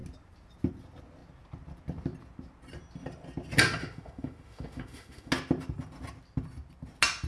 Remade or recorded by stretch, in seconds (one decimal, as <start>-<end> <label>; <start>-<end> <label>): 0.0-3.8 recorded; 3.8-5.3 remade; 5.3-7.3 recorded